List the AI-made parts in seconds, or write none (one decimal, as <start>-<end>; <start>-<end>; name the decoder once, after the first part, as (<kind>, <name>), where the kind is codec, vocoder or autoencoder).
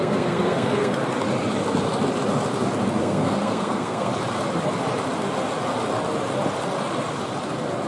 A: 0.0-1.0 (codec, SNAC); 3.0-4.1